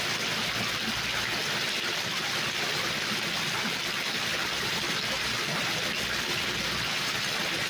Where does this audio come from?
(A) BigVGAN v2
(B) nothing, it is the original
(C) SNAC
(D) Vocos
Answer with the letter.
B